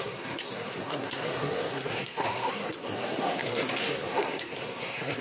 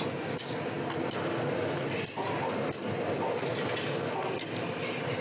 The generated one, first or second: first